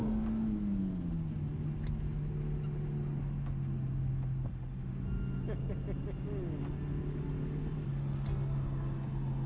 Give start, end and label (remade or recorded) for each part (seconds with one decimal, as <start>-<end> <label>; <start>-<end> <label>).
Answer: 0.0-9.5 recorded